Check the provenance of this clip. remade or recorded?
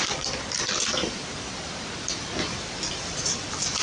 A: remade